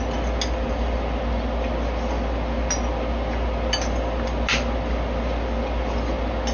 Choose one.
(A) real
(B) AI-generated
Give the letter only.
A